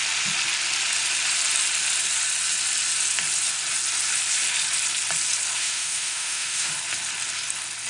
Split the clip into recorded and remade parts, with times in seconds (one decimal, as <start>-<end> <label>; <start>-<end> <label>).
0.0-5.6 recorded; 5.6-6.7 remade; 6.7-7.9 recorded